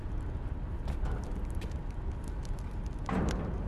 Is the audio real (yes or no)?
yes